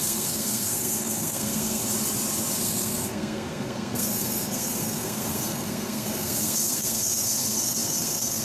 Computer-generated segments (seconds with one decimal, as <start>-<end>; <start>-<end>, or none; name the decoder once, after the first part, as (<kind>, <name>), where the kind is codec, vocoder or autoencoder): 0.0-1.8 (codec, SNAC); 2.6-8.4

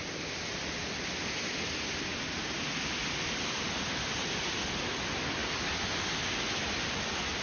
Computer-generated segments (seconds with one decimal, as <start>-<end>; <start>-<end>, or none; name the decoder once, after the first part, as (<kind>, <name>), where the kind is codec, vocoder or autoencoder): 2.1-3.9 (vocoder, BigVGAN v2); 5.4-5.9

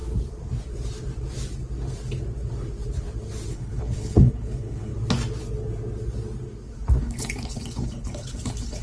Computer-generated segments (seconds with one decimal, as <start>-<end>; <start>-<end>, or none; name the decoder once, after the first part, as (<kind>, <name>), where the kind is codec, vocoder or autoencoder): 3.5-4.9 (codec, HILCodec); 7.0-8.8